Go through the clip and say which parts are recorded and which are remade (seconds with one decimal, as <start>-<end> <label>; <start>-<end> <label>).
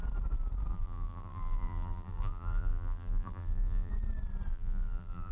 0.0-0.7 recorded; 0.7-3.9 remade; 3.9-4.5 recorded; 4.5-5.3 remade